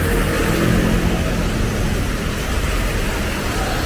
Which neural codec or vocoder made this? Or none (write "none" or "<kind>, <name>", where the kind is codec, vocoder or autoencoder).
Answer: none